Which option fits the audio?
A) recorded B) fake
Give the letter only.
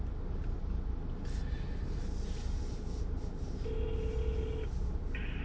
A